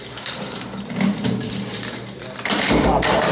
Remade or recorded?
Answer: remade